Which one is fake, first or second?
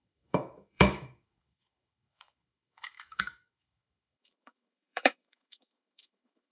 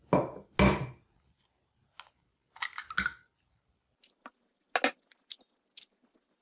first